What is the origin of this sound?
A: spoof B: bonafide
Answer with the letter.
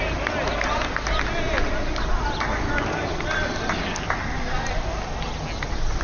B